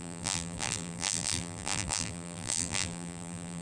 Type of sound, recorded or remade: remade